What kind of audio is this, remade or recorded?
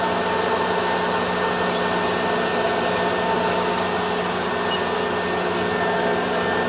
recorded